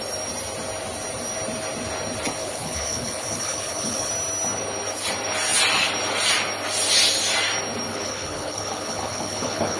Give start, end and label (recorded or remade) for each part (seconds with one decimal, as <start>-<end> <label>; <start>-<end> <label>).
0.0-2.4 recorded; 2.4-4.1 remade; 4.1-7.9 recorded; 7.9-9.8 remade